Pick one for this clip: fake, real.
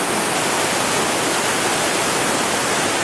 real